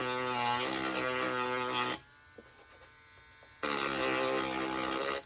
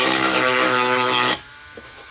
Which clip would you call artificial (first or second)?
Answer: second